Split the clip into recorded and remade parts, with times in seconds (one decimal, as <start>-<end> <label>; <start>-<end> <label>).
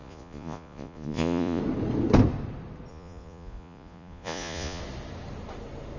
0.0-1.6 remade; 1.6-2.9 recorded; 2.9-4.8 remade; 4.8-6.0 recorded